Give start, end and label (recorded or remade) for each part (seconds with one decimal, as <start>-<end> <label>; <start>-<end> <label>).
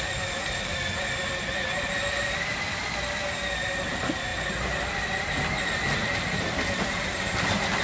0.0-7.8 recorded